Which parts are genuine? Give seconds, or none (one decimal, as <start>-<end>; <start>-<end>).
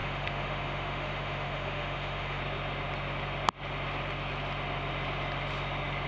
2.4-6.1